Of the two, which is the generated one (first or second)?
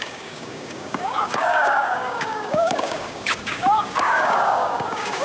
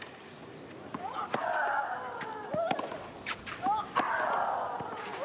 first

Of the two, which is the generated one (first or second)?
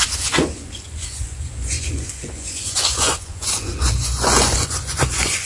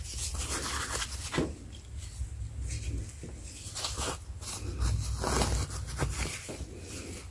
first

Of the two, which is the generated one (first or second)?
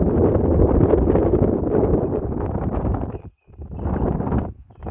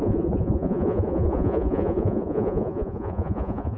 second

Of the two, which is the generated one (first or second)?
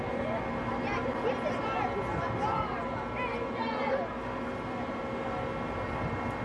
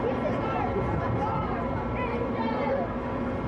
second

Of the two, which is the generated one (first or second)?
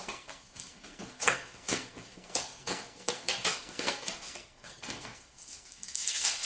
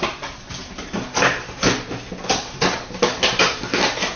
first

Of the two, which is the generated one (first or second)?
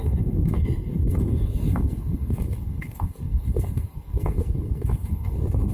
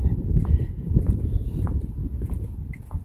first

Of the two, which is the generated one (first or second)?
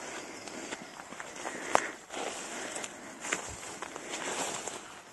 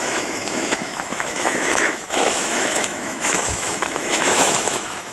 second